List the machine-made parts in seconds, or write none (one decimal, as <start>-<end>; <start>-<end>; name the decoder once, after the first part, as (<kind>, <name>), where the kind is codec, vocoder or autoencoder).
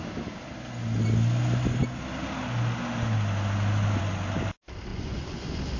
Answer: 4.9-5.8 (vocoder, Vocos)